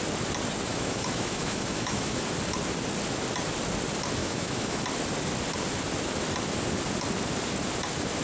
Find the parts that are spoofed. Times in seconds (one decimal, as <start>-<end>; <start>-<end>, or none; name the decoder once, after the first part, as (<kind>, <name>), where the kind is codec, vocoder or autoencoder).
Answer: 0.7-2.2 (autoencoder, DAC-VAE); 4.2-4.8